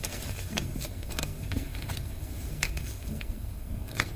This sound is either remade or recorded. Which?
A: remade